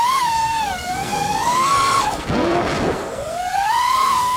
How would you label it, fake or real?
fake